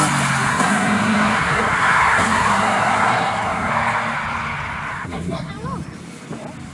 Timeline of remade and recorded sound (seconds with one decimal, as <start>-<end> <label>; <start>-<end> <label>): 0.0-0.5 recorded; 0.5-3.7 remade; 3.7-4.9 recorded; 4.9-5.5 remade; 5.5-6.7 recorded